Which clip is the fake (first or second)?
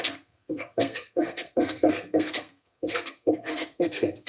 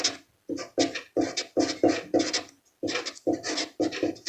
first